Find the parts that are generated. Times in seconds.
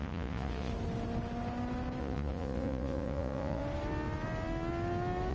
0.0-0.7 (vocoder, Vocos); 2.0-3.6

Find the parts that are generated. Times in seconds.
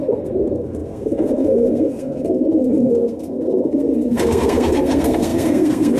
0.0-6.0 (codec, SNAC)